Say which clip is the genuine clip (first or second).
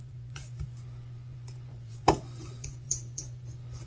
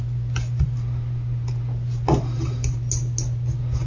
second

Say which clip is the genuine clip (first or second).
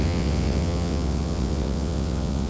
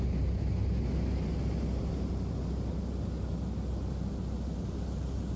second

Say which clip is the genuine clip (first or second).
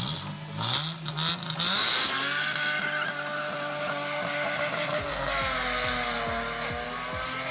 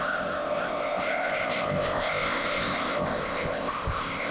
first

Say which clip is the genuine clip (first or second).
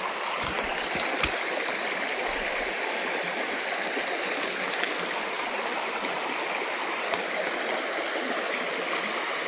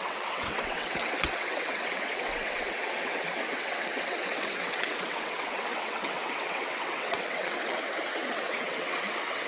first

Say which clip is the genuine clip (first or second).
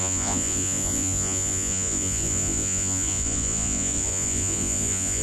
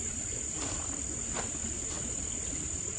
second